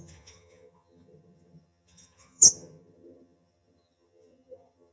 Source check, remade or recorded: remade